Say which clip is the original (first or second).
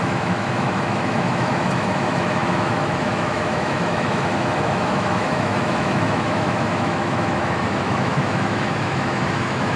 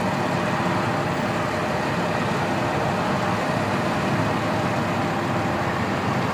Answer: second